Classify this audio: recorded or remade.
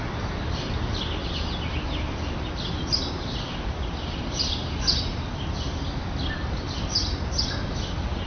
recorded